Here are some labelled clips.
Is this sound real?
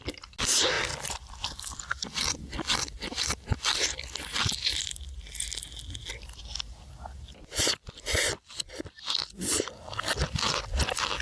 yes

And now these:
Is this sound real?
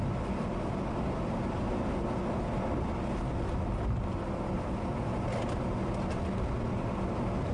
yes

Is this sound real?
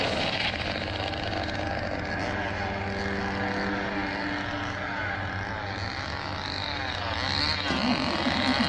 yes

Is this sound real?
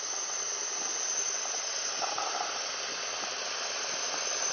yes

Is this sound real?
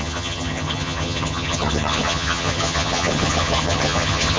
no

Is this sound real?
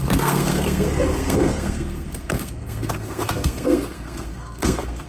no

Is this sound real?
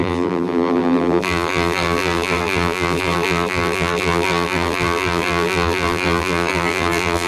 no